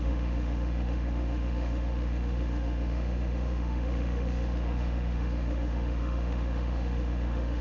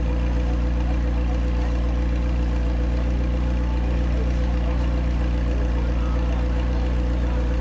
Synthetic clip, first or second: first